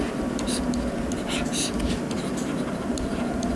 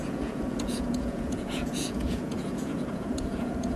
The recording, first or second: first